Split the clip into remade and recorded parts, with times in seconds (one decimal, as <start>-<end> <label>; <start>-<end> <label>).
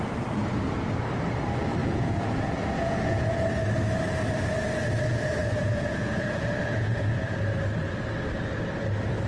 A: 0.0-1.8 recorded; 1.8-3.4 remade; 3.4-5.4 recorded; 5.4-7.4 remade; 7.4-9.3 recorded